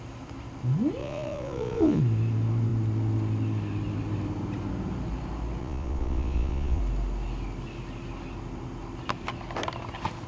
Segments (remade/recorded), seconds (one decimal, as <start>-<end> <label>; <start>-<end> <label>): 0.0-1.0 recorded; 1.0-2.0 remade; 2.0-5.6 recorded; 5.6-6.8 remade; 6.8-10.3 recorded